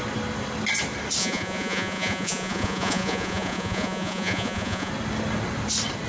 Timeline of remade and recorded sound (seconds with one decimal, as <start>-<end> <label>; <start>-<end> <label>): 0.0-1.2 recorded; 1.2-4.9 remade; 4.9-6.1 recorded